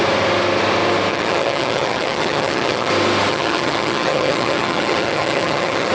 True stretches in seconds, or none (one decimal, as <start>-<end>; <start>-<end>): 0.0-1.1; 2.9-3.3